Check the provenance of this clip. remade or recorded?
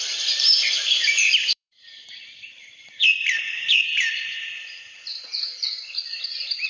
remade